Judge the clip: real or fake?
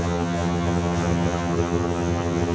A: fake